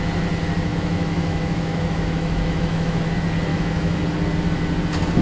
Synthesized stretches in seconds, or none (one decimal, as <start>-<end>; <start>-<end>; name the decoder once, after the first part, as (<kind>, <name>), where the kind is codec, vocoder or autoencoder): 0.7-3.0 (autoencoder, DAC-VAE); 3.5-4.0